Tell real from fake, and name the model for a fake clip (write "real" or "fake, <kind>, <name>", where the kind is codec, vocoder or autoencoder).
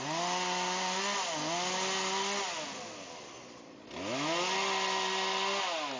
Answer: real